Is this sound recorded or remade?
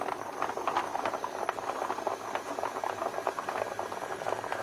recorded